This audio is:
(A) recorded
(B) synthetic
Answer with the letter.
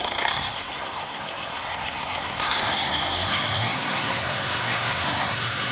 B